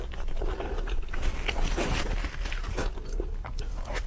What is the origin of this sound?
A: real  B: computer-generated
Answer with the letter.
A